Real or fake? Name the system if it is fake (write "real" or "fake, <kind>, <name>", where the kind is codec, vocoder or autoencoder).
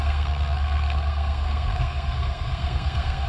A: fake, codec, SNAC